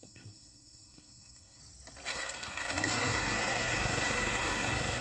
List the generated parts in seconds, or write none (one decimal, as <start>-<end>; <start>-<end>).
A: 0.0-1.6; 2.1-5.0